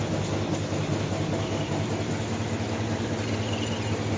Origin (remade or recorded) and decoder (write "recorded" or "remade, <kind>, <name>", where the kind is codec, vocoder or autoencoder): recorded